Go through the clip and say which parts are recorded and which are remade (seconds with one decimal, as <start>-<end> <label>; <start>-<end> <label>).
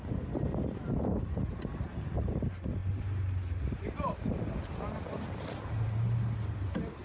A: 0.0-7.0 recorded